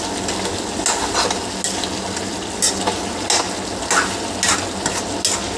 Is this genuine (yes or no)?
yes